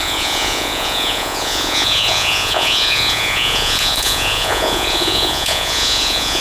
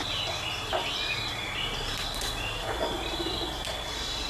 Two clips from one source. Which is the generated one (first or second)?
first